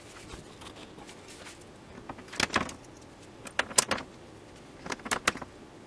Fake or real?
real